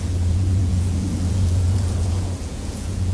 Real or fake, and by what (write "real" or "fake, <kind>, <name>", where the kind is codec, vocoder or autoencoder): fake, vocoder, Vocos